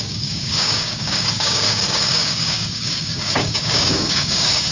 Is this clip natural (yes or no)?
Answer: no